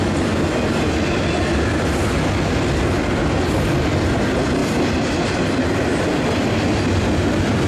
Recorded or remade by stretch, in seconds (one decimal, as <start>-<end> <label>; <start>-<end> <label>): 0.0-7.7 recorded